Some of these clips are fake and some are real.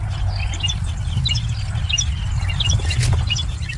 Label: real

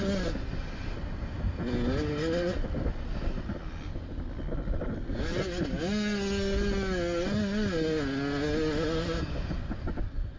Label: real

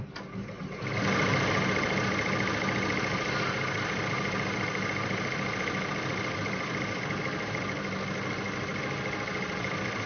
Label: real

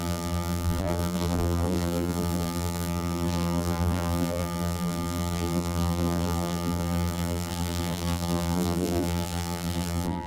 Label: fake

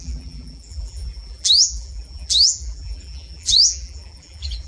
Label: fake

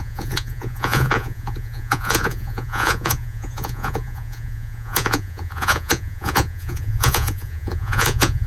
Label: fake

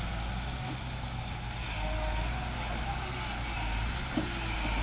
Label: real